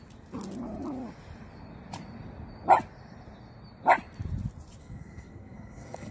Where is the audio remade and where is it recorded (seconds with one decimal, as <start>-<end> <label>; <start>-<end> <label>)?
0.0-4.8 recorded; 4.8-6.1 remade

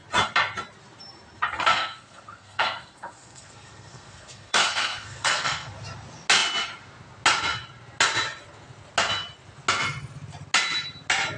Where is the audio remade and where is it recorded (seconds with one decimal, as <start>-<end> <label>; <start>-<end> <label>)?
0.0-1.7 recorded; 1.7-5.7 remade; 5.7-11.4 recorded

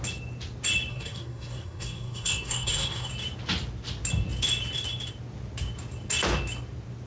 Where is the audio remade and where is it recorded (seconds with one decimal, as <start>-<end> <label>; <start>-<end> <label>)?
0.0-0.9 recorded; 0.9-3.1 remade; 3.1-7.1 recorded

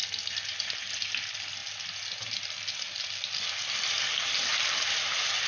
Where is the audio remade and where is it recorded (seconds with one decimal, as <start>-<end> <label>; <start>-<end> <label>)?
0.0-5.5 recorded